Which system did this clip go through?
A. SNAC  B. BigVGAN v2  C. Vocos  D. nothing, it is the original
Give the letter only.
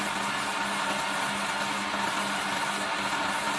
D